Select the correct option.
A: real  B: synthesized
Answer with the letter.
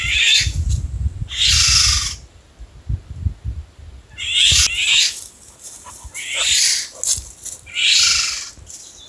A